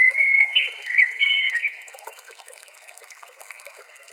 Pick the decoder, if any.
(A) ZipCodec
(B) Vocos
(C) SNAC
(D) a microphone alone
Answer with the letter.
C